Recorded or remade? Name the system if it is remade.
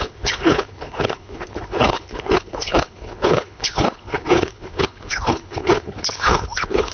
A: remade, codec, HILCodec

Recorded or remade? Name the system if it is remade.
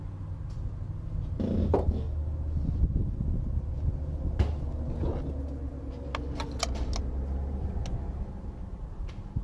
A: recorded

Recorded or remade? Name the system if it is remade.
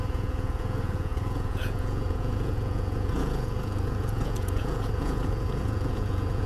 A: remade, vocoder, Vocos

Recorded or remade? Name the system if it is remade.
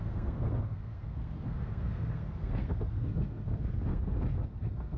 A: remade, codec, SNAC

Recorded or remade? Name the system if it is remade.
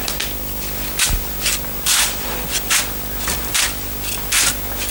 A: recorded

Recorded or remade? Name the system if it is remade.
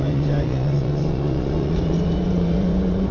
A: remade, vocoder, Vocos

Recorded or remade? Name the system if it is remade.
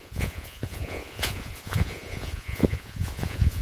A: remade, vocoder, Vocos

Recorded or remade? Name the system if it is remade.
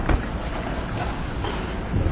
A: recorded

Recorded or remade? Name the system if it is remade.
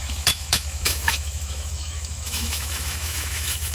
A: remade, autoencoder, DAC-VAE